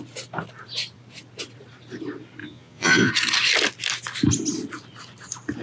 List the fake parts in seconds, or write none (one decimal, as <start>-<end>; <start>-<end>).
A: 2.4-3.1